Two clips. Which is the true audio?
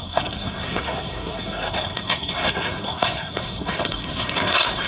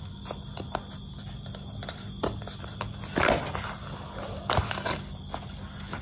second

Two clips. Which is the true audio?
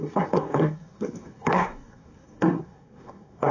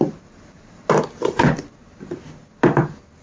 second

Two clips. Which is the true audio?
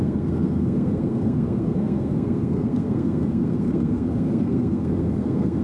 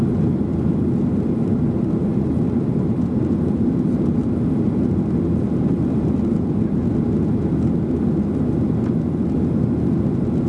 second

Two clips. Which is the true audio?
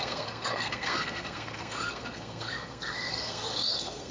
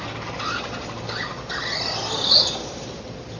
second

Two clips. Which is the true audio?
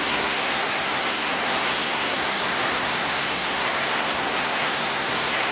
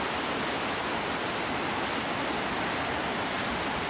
second